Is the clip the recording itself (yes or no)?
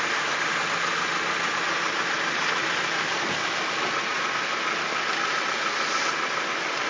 yes